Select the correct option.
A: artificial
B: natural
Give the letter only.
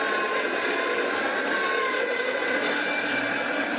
B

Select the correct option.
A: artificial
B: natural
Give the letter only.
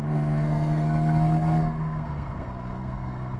A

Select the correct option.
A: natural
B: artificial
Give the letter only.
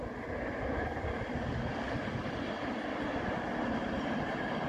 A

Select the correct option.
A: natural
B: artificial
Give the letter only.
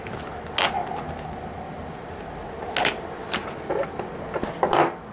A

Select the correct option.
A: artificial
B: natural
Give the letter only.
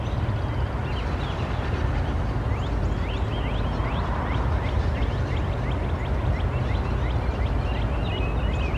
B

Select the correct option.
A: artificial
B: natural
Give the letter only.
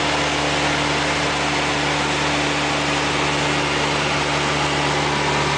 B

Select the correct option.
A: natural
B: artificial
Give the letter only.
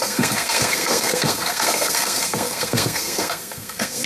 B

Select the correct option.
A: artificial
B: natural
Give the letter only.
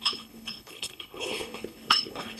A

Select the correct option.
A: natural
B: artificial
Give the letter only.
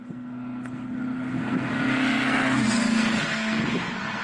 B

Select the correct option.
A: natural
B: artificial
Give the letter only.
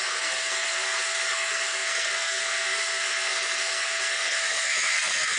B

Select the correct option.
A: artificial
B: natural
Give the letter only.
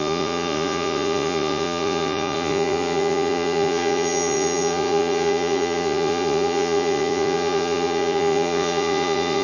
A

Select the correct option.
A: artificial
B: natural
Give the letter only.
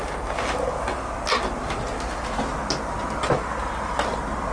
B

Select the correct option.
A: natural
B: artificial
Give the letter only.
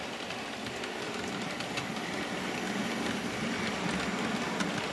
A